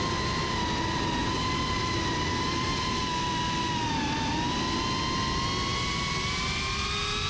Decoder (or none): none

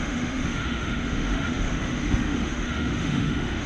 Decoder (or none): autoencoder, DAC-VAE